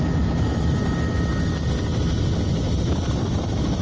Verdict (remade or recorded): recorded